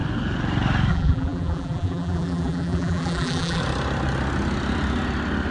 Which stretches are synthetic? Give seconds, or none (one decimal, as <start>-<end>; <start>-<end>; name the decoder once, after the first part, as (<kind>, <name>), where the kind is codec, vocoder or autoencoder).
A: 0.9-3.6 (vocoder, BigVGAN v2)